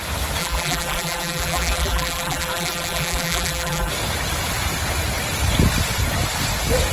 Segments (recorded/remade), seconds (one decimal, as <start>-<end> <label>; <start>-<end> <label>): 0.0-0.4 recorded; 0.4-3.9 remade; 3.9-6.9 recorded

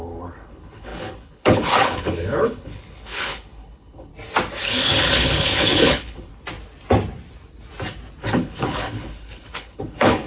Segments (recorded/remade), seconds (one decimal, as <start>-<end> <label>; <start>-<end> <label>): 0.0-4.1 remade; 4.1-4.6 recorded; 4.6-6.3 remade; 6.3-8.2 recorded; 8.2-10.3 remade

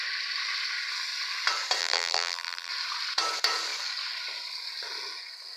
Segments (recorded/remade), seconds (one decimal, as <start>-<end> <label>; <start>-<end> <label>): 0.0-1.8 recorded; 1.8-2.7 remade; 2.7-5.6 recorded

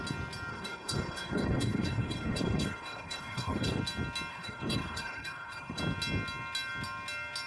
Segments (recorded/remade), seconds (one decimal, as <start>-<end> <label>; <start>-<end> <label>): 0.0-0.5 recorded; 0.5-3.8 remade; 3.8-4.3 recorded; 4.3-5.8 remade; 5.8-7.5 recorded

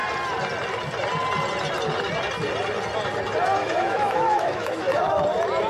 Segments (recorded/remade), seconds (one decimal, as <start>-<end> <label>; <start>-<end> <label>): 0.0-3.6 recorded; 3.6-5.2 remade; 5.2-5.7 recorded